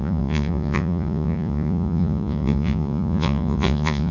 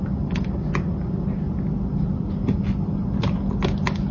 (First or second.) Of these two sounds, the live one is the second